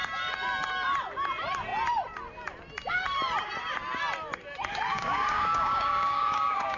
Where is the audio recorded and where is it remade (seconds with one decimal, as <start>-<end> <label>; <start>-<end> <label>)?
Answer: 0.0-4.9 recorded; 4.9-6.8 remade